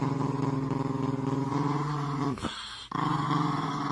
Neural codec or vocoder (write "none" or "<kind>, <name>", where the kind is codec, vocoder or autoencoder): none